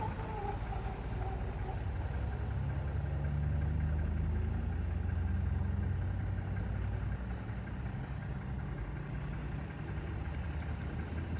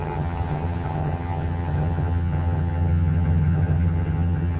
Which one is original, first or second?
first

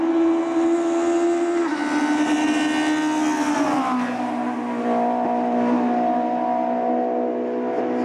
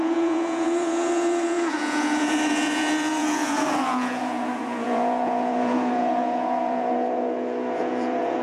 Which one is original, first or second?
first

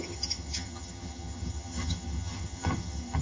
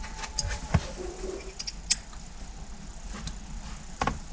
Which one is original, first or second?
second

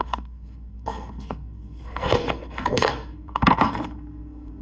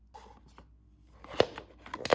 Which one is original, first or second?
second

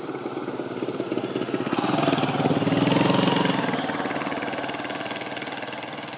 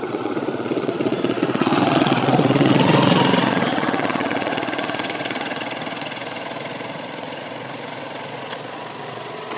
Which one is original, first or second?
first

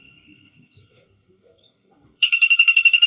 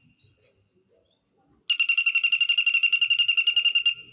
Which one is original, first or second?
second